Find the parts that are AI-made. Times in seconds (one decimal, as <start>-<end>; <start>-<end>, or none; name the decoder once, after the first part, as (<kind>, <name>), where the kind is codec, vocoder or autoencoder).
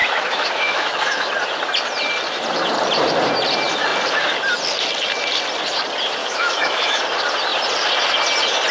0.0-1.3 (autoencoder, DAC-VAE); 6.2-7.0